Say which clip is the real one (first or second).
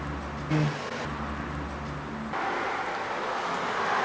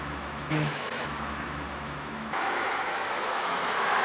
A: first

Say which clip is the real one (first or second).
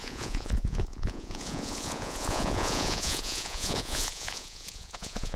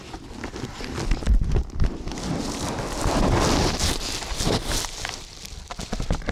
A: second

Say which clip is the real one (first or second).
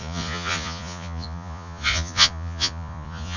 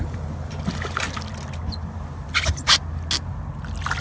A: second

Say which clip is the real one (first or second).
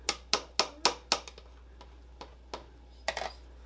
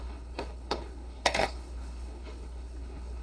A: first